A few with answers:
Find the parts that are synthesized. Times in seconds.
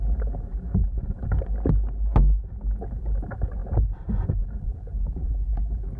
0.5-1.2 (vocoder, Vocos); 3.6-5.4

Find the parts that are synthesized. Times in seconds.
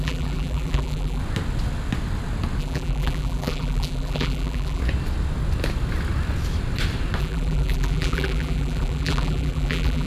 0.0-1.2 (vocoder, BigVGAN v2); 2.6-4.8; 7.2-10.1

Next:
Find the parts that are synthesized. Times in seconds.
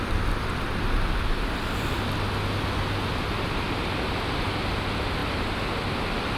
none